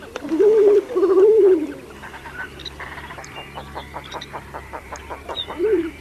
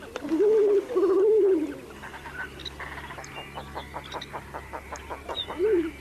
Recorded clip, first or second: second